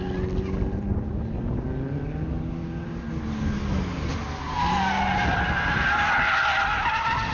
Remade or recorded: recorded